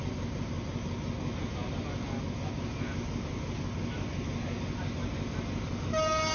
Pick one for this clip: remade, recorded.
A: recorded